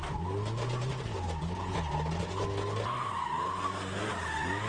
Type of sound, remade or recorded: recorded